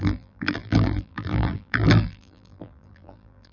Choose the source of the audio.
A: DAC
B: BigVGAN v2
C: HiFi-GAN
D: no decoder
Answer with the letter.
B